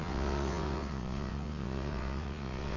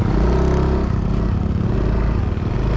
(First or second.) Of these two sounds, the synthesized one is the first